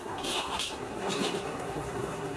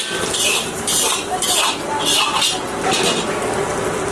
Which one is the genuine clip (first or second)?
second